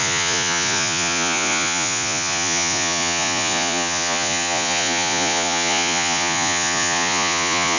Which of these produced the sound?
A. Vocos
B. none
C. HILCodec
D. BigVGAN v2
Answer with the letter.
A